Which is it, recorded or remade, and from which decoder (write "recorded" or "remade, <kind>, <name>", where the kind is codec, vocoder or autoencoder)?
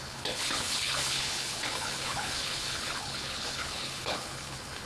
remade, codec, HILCodec